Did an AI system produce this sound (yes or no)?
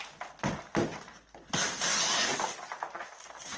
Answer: no